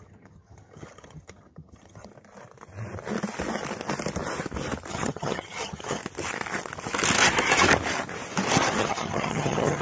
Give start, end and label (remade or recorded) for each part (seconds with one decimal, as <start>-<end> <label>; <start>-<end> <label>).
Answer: 0.0-2.1 remade; 2.1-4.9 recorded; 4.9-6.0 remade; 6.0-8.8 recorded; 8.8-9.8 remade